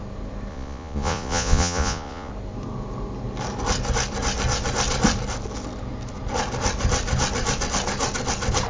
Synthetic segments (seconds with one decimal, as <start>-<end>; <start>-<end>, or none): 0.5-2.3